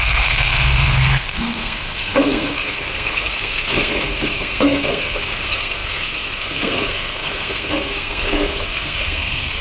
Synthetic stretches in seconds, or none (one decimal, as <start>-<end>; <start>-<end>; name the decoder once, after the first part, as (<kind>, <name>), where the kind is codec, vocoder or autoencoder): 0.0-9.6 (codec, SNAC)